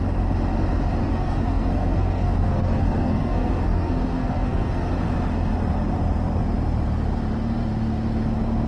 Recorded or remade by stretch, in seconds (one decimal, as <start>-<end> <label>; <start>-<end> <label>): 0.0-1.0 recorded; 1.0-4.9 remade; 4.9-8.7 recorded